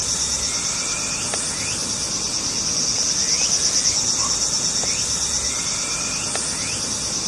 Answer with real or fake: real